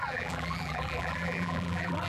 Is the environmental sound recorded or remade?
remade